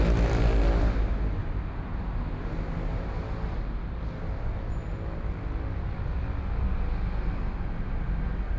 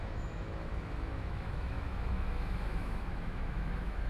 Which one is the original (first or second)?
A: first